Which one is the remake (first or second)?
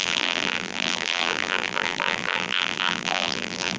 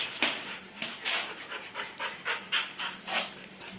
first